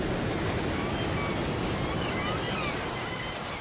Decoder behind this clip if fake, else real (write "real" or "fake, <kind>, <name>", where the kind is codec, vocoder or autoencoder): real